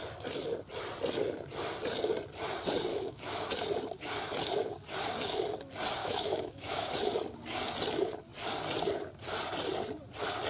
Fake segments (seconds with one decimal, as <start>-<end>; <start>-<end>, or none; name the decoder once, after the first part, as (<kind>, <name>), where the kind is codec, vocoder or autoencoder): 2.9-3.5 (autoencoder, DAC-VAE); 6.0-6.9